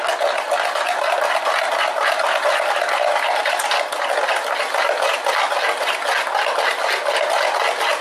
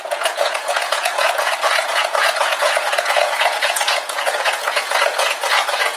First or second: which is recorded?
first